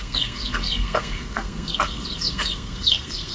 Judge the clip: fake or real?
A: fake